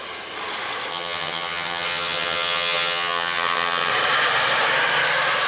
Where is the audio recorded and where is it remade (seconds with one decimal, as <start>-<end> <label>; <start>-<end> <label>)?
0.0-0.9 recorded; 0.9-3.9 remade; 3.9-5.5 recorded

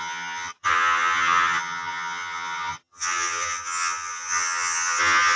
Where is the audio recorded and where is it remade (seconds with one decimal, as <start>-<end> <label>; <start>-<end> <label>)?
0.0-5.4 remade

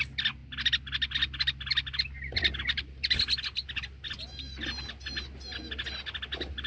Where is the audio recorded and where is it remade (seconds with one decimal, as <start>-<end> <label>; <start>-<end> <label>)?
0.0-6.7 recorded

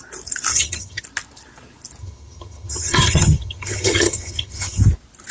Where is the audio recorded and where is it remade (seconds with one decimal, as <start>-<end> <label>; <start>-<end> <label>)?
0.0-0.5 recorded; 0.5-1.0 remade; 1.0-2.0 recorded; 2.0-4.8 remade; 4.8-5.3 recorded

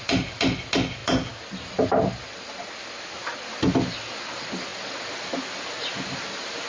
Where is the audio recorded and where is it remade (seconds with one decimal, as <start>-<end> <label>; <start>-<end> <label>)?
0.0-6.7 recorded

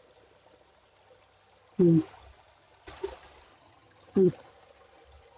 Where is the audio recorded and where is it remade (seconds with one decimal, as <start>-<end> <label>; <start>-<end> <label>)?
0.0-3.5 recorded; 3.5-4.5 remade; 4.5-5.4 recorded

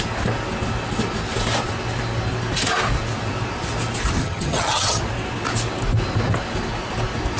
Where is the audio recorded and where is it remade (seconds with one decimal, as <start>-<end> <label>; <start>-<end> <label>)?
0.0-4.2 recorded; 4.2-5.0 remade; 5.0-7.4 recorded